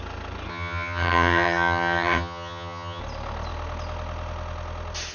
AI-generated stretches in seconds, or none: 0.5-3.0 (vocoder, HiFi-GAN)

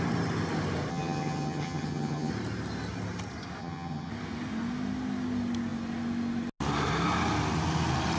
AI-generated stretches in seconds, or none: 0.9-2.3 (vocoder, HiFi-GAN); 3.6-4.1